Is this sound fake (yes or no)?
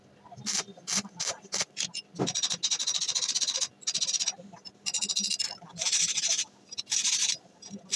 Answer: no